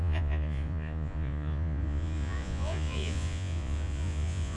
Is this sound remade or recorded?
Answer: remade